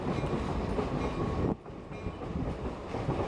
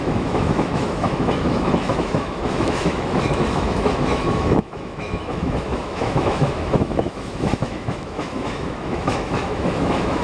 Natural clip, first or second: first